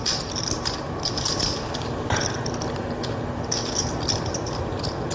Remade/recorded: recorded